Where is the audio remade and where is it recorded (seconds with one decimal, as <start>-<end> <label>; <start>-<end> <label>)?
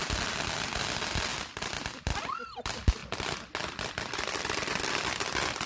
0.0-3.0 remade; 3.0-3.9 recorded; 3.9-5.7 remade